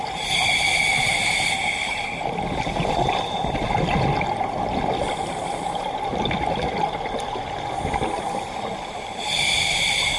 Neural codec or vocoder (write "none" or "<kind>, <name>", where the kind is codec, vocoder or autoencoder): none